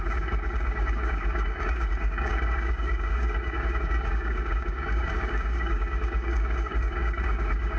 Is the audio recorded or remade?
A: remade